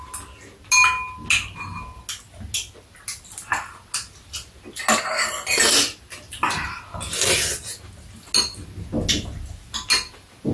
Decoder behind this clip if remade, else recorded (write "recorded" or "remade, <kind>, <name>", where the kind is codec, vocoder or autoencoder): recorded